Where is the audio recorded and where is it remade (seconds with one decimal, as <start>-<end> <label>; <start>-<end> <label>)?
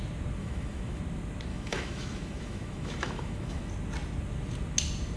0.0-0.4 recorded; 0.4-1.0 remade; 1.0-1.5 recorded; 1.5-3.7 remade; 3.7-5.2 recorded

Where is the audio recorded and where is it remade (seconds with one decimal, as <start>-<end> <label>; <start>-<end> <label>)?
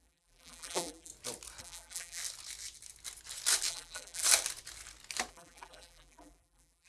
0.0-1.1 remade; 1.1-1.6 recorded; 1.6-2.2 remade; 2.2-3.7 recorded; 3.7-4.2 remade; 4.2-5.3 recorded; 5.3-6.9 remade